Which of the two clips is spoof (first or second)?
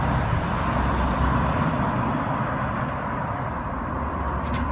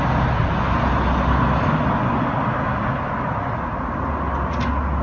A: first